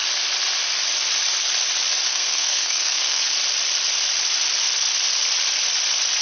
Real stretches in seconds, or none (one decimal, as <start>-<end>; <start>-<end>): 0.0-2.1; 3.2-6.2